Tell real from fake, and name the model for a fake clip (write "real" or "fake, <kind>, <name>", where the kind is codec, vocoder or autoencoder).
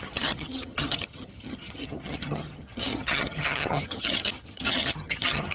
fake, vocoder, HiFi-GAN